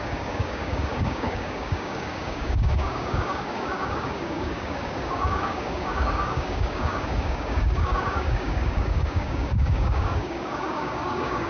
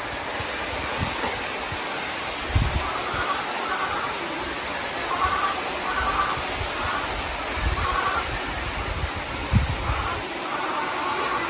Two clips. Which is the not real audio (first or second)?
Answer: first